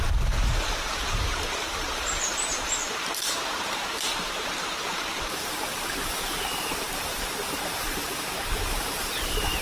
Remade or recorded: remade